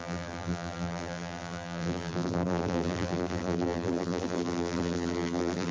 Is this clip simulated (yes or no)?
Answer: yes